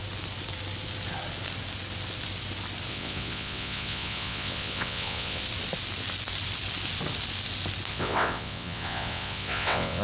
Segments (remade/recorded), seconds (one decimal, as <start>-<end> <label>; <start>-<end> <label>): 0.0-2.9 recorded; 2.9-5.4 remade; 5.4-7.9 recorded; 7.9-10.0 remade